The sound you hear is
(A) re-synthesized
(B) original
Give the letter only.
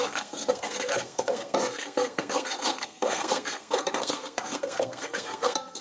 A